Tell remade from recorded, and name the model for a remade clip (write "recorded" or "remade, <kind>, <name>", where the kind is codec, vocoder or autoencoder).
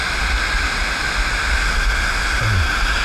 recorded